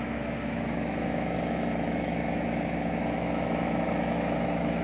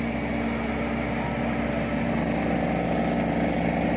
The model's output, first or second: first